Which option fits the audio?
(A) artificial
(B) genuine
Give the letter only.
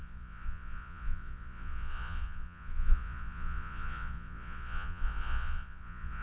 A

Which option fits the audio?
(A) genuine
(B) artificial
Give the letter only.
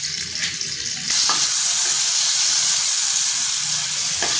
A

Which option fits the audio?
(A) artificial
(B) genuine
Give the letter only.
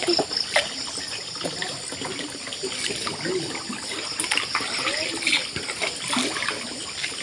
B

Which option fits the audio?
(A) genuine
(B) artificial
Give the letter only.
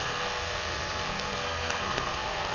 B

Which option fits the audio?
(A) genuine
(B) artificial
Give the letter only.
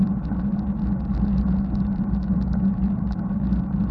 A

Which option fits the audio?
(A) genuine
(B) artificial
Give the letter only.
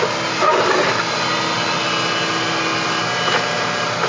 A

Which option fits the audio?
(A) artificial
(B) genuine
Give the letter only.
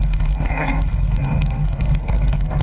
A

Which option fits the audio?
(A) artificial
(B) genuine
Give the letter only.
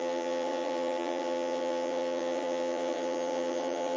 A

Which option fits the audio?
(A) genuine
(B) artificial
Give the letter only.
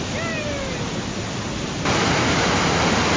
A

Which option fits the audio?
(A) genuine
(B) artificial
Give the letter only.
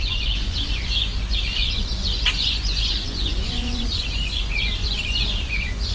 B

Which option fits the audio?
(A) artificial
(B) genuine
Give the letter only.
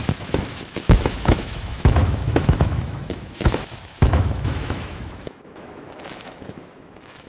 A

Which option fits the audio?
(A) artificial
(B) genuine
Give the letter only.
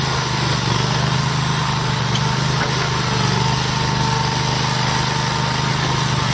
B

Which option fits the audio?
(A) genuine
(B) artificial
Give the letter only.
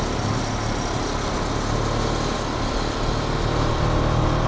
A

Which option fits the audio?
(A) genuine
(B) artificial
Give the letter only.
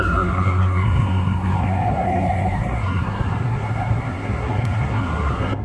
B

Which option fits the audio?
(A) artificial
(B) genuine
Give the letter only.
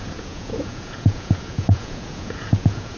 A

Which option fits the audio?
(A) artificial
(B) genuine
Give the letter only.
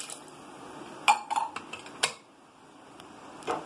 B